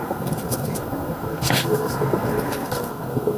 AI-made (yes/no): yes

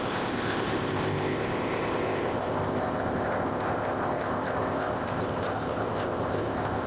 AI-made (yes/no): yes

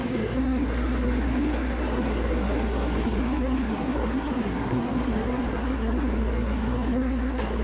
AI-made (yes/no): yes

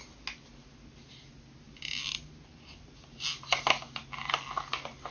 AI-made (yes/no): no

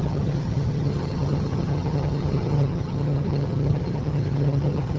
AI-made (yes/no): yes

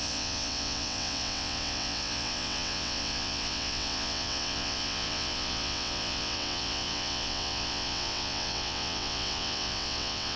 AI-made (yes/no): yes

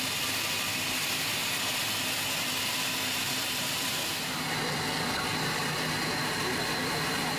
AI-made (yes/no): no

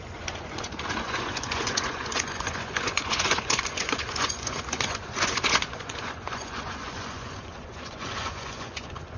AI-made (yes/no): yes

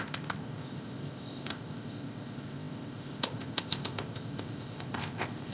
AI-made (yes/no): yes